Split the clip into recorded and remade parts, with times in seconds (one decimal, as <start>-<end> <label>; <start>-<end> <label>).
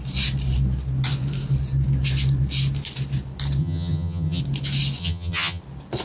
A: 0.0-3.6 recorded; 3.6-4.4 remade; 4.4-5.0 recorded; 5.0-5.6 remade; 5.6-6.0 recorded